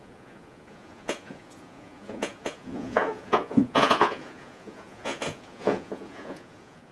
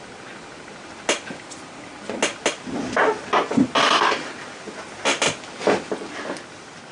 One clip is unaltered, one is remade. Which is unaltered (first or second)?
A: second